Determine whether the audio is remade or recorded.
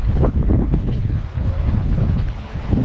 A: remade